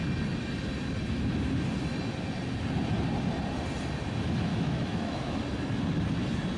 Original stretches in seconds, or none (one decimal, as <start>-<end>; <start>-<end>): 0.0-4.5; 5.4-6.6